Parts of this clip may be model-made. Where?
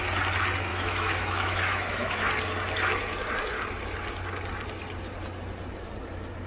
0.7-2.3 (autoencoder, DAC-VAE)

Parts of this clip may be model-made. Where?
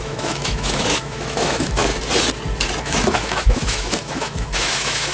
0.0-1.9 (autoencoder, DAC-VAE); 2.8-5.1